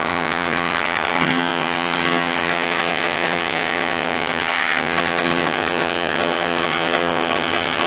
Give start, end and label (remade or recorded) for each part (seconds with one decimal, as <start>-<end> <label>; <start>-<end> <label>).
0.0-7.9 remade